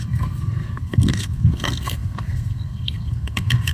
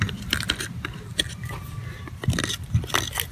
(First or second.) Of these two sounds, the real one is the second